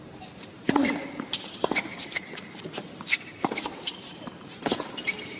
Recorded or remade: remade